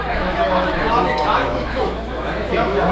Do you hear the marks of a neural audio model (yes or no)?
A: yes